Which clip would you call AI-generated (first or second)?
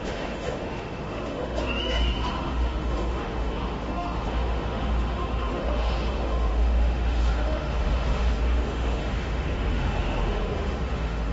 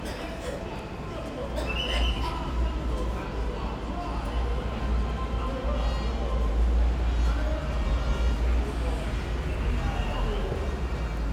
first